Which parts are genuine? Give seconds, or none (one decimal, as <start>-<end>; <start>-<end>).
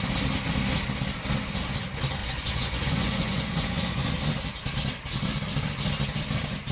0.0-2.2; 4.1-6.7